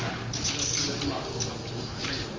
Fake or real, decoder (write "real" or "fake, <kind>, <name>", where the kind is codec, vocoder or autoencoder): real